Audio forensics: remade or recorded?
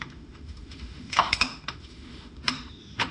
remade